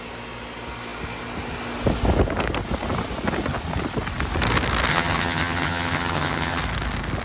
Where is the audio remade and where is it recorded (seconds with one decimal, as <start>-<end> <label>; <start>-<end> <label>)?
0.0-4.9 recorded; 4.9-6.6 remade; 6.6-7.2 recorded